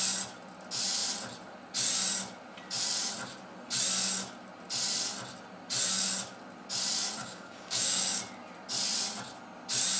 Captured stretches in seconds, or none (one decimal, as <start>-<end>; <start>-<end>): 0.0-7.2; 8.2-10.0